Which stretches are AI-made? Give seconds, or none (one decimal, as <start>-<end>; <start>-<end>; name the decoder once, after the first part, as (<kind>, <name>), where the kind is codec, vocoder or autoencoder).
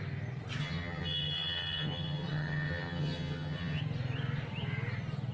0.6-3.8 (vocoder, HiFi-GAN)